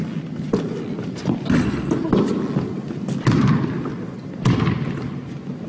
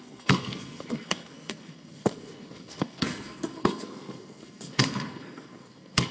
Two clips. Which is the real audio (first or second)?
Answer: first